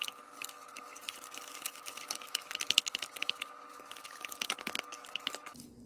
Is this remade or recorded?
remade